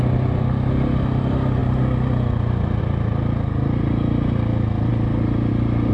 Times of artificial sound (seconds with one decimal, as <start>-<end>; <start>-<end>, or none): none